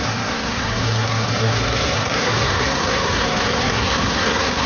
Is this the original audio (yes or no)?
no